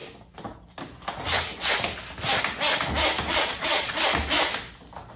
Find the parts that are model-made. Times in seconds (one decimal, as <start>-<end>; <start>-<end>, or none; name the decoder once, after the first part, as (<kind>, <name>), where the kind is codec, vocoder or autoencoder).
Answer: 3.3-3.9 (vocoder, Vocos)